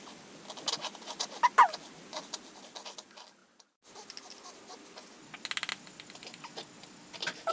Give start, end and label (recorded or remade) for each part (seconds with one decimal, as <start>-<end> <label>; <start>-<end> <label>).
0.0-7.5 recorded